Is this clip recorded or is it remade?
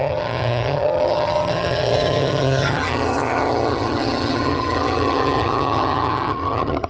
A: remade